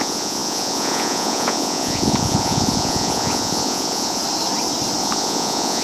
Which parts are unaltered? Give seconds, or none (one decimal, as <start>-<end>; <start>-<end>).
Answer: 4.2-5.0